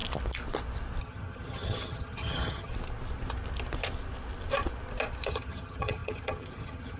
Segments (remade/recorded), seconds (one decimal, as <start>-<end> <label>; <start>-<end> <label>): 0.0-1.0 recorded; 1.0-2.7 remade; 2.7-5.3 recorded; 5.3-7.0 remade